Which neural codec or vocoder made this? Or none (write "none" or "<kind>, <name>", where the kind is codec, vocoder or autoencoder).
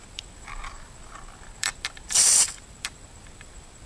vocoder, BigVGAN v2